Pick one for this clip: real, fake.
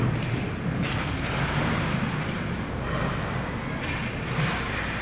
real